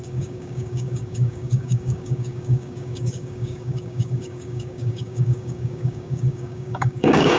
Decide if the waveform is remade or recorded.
remade